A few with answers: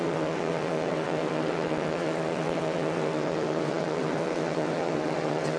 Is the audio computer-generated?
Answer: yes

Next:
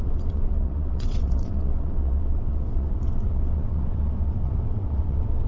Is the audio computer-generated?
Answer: yes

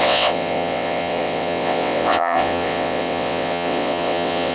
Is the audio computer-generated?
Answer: yes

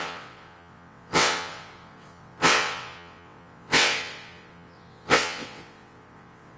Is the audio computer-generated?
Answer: yes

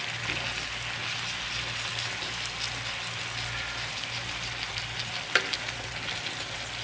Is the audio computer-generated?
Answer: no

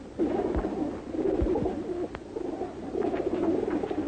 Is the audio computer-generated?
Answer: no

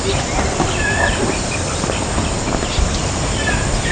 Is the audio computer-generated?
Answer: no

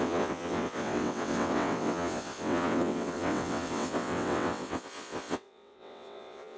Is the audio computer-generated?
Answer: yes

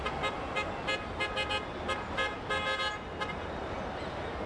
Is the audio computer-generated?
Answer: no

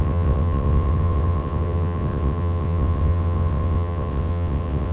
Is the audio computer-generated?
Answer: yes